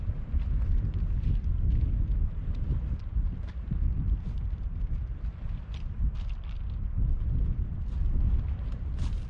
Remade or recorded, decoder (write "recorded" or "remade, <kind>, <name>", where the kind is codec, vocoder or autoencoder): recorded